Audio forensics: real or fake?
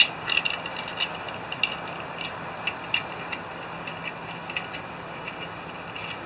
real